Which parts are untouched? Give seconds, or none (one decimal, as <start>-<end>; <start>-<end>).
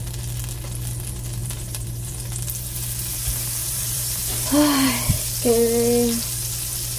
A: 0.0-1.4; 2.1-3.6; 5.2-7.0